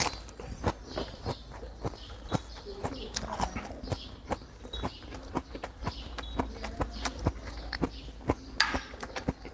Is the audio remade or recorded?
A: recorded